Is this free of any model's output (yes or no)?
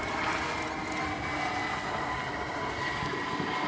yes